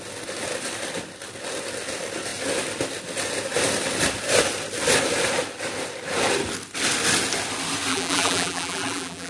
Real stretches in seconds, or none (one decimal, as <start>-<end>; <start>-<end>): 0.0-7.9